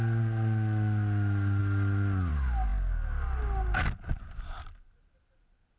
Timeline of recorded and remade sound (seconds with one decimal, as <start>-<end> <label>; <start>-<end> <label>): 0.0-5.8 recorded